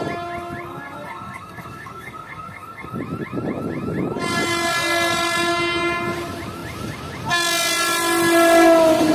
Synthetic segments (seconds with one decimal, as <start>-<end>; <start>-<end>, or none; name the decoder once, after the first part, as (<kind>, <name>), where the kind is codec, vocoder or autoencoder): 0.7-3.0 (codec, SNAC)